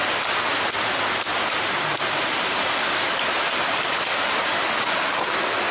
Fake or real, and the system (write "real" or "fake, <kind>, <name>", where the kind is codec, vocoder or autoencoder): real